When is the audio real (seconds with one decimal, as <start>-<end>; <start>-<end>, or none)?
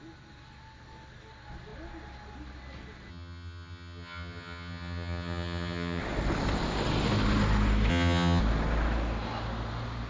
0.0-3.1; 6.0-7.9; 8.4-10.1